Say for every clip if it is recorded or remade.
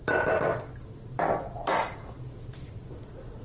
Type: recorded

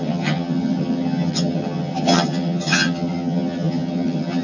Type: remade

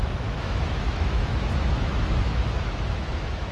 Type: remade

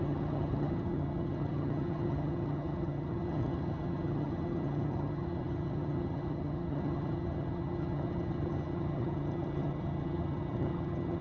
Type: remade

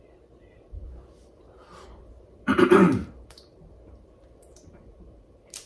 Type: remade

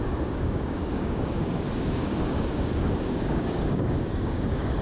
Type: remade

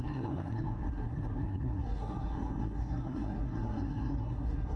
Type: remade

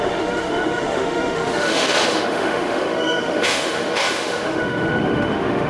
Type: remade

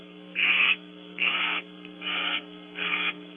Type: remade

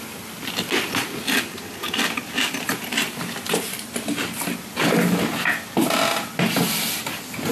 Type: recorded